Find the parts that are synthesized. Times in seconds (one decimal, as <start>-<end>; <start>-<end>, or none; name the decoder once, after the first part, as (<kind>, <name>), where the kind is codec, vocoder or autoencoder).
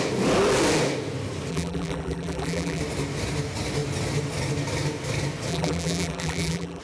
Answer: 1.5-2.8 (vocoder, BigVGAN v2); 5.5-6.8